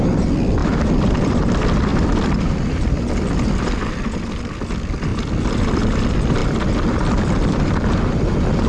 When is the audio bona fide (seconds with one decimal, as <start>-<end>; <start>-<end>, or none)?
5.1-5.6; 6.4-7.1